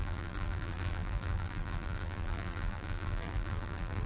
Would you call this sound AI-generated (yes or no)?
yes